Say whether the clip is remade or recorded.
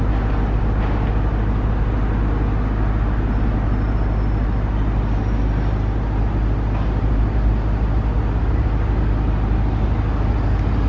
recorded